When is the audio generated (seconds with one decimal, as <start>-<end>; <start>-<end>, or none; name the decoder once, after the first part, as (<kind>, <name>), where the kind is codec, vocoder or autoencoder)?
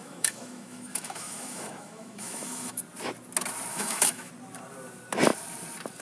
0.0-2.8 (autoencoder, DAC-VAE); 3.7-4.3